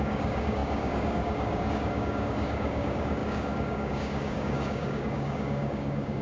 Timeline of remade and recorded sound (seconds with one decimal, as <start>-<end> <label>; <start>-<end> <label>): 0.0-6.2 remade